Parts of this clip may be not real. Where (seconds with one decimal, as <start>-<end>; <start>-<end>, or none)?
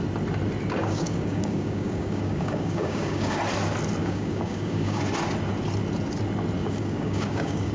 0.8-3.4; 4.0-5.0; 6.6-7.7